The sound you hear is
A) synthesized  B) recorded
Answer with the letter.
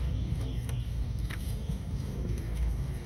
A